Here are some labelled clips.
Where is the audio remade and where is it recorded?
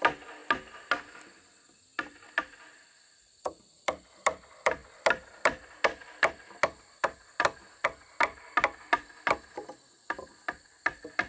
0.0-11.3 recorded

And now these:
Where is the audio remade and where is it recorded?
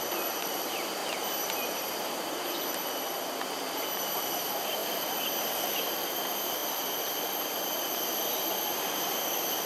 0.0-1.0 remade; 1.0-1.7 recorded; 1.7-9.7 remade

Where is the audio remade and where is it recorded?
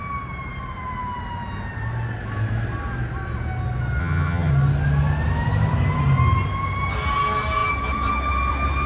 0.0-4.0 recorded; 4.0-4.5 remade; 4.5-8.9 recorded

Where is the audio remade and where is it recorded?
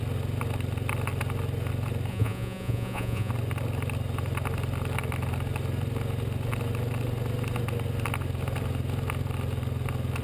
0.0-2.1 recorded; 2.1-3.3 remade; 3.3-10.2 recorded